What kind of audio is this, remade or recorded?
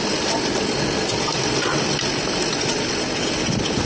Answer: recorded